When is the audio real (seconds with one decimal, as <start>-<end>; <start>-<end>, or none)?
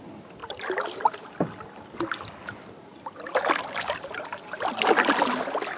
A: 0.0-5.8